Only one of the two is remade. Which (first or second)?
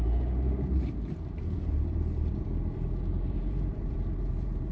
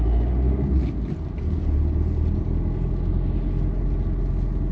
first